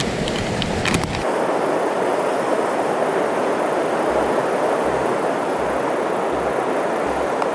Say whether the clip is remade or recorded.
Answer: recorded